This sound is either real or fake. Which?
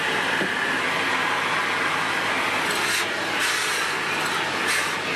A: real